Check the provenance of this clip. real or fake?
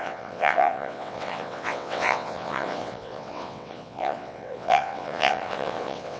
fake